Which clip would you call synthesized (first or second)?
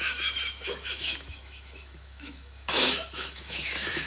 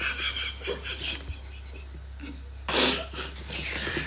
first